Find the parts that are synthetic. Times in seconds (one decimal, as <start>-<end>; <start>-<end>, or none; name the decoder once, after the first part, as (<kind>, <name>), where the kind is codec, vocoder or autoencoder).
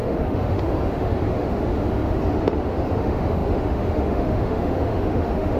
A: 0.0-5.6 (autoencoder, DAC-VAE)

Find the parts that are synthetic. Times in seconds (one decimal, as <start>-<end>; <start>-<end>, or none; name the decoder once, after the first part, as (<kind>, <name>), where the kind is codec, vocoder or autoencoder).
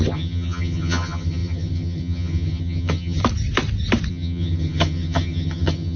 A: 0.0-3.2 (vocoder, HiFi-GAN); 4.1-6.0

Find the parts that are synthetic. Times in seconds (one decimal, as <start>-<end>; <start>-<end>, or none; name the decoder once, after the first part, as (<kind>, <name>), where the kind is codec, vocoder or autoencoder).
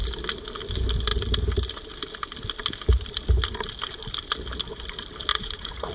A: 5.3-5.9 (vocoder, Vocos)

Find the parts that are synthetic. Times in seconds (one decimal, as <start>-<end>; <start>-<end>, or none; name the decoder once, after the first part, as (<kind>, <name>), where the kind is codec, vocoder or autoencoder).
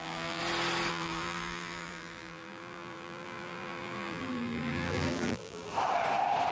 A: 0.0-0.4 (vocoder, BigVGAN v2); 0.9-5.7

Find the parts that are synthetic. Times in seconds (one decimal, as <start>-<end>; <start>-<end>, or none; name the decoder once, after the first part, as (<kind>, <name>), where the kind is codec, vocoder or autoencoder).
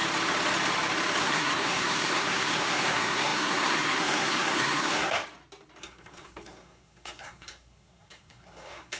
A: 1.2-5.2 (codec, SNAC); 5.8-9.0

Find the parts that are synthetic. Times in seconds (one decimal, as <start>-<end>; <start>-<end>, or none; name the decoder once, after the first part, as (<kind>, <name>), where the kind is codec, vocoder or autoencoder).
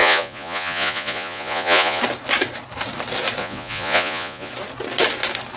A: 0.0-2.0 (vocoder, Vocos); 3.4-4.5